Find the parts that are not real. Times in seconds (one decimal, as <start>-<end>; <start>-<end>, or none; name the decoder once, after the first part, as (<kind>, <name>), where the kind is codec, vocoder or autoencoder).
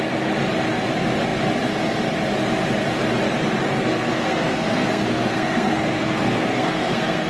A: 3.7-7.3 (codec, SNAC)